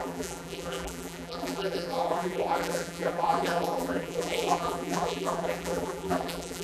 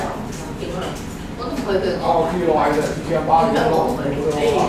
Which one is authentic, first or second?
second